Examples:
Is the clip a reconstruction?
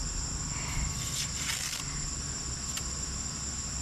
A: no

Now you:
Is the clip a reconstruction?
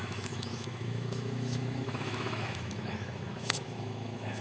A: yes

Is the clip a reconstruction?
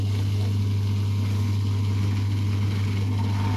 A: no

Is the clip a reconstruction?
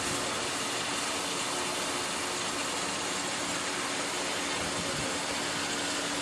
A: no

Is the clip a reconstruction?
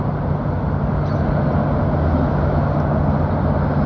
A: no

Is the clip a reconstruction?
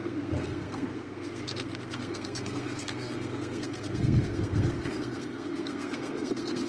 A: yes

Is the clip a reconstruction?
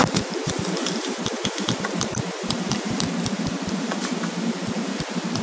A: yes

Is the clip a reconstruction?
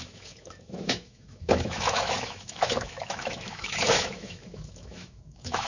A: yes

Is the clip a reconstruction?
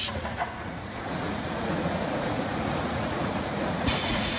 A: yes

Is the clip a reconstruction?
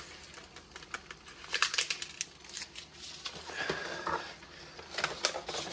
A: no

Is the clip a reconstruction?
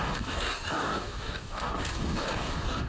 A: yes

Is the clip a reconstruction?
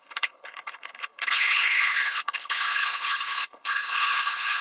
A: yes